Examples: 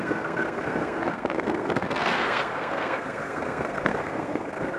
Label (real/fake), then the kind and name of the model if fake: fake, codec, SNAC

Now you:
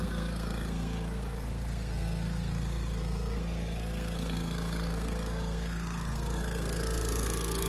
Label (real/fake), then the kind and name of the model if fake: fake, codec, SNAC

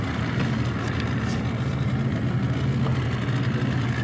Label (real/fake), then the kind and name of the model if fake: real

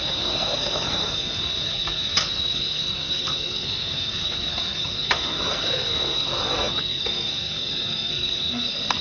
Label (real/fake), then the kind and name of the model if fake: fake, codec, SNAC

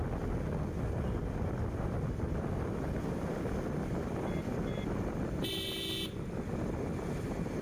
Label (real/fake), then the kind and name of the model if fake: real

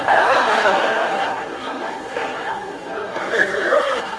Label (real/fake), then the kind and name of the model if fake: fake, codec, SNAC